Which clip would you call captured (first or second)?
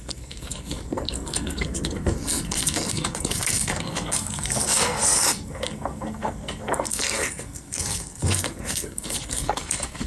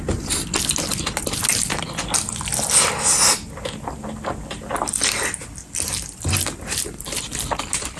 second